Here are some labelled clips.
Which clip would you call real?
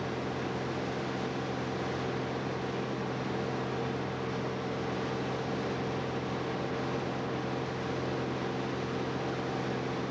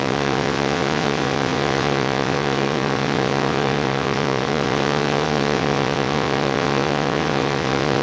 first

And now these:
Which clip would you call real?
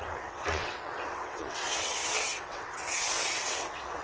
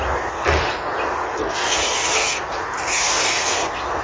second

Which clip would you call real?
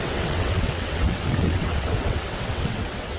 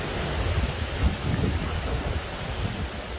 second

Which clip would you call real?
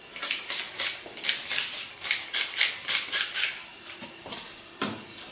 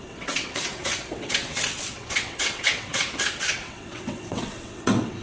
first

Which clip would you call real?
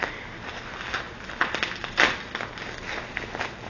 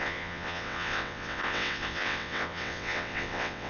first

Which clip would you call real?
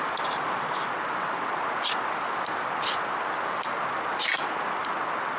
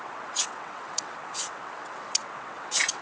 first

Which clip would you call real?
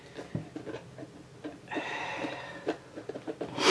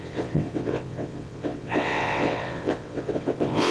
first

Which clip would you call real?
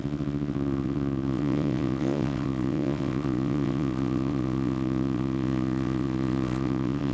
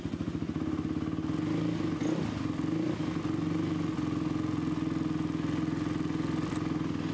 second